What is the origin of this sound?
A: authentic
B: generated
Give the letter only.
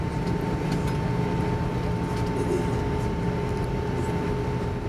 A